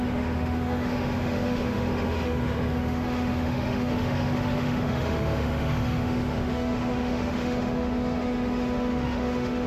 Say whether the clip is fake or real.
fake